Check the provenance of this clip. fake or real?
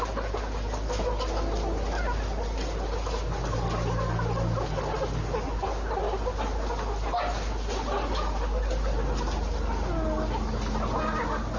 real